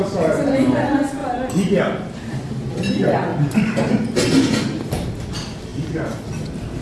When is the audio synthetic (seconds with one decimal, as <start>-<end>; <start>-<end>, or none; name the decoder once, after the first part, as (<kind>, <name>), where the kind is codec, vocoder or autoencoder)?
none